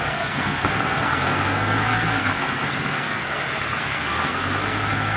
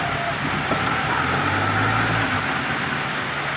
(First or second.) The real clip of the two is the second